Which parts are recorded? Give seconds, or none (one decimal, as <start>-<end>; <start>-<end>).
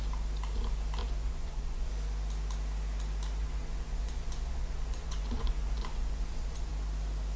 0.0-1.0; 1.9-3.4; 6.7-7.4